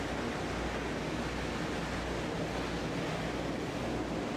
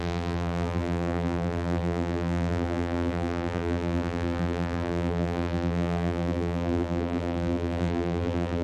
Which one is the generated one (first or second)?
second